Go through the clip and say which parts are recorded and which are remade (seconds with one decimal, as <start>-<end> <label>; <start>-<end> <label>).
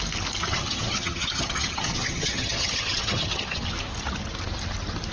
0.0-0.5 recorded; 0.5-3.6 remade; 3.6-5.1 recorded